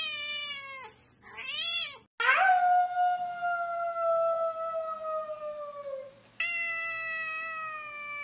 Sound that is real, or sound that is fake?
real